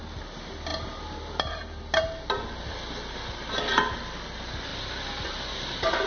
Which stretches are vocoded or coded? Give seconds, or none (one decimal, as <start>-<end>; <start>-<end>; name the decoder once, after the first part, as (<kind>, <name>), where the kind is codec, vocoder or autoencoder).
none